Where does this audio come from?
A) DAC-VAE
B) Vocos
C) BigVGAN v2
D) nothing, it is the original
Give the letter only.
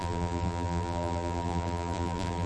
C